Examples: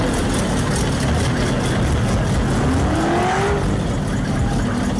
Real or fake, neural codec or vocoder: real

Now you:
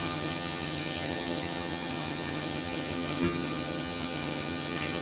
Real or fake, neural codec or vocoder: fake, vocoder, HiFi-GAN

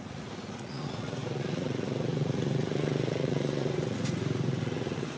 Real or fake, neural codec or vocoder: fake, vocoder, Vocos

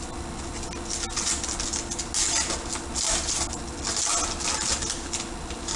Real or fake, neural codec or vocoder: real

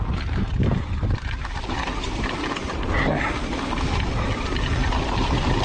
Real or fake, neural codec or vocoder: real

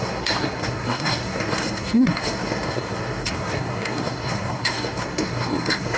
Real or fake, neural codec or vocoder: fake, codec, SNAC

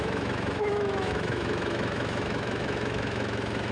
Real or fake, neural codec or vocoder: fake, autoencoder, DAC-VAE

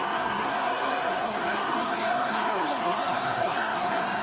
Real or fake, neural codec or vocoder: fake, codec, SNAC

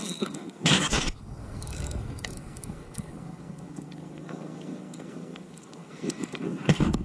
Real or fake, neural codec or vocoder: fake, codec, SNAC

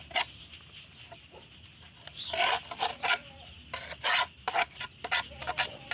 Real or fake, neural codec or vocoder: real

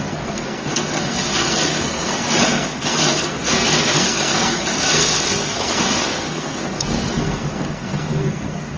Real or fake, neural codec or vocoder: fake, codec, SNAC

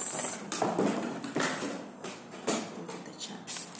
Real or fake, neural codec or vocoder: real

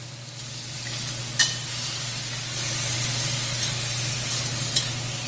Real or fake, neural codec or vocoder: real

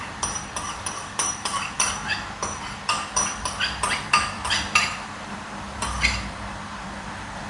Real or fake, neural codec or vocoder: fake, vocoder, BigVGAN v2